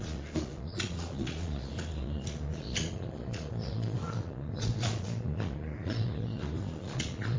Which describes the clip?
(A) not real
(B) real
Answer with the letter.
A